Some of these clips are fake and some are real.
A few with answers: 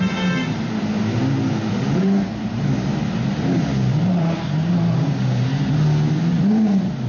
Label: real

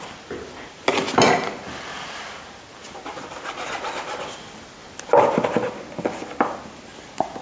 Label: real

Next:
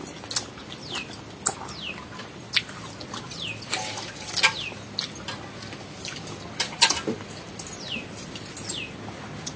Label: real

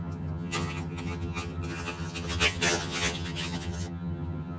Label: fake